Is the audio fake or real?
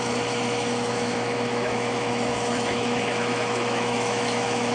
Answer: fake